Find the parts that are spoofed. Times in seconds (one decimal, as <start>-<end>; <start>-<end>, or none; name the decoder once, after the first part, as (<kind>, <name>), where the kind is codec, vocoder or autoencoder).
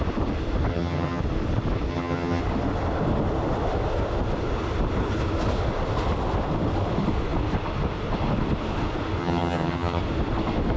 0.7-1.2 (vocoder, HiFi-GAN); 1.9-2.4; 9.2-10.0